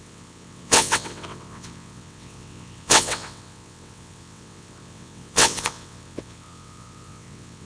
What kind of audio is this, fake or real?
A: fake